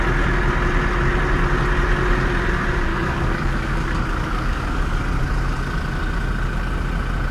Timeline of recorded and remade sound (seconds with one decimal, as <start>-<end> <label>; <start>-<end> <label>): 0.0-2.9 recorded; 2.9-5.0 remade; 5.0-7.3 recorded